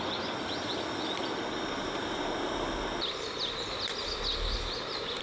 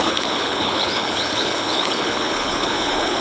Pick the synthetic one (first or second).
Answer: second